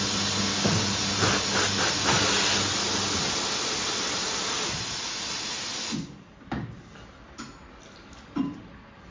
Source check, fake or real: real